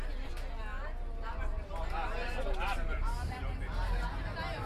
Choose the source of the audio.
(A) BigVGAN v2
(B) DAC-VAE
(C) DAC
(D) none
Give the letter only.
D